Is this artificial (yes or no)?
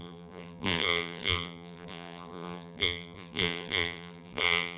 yes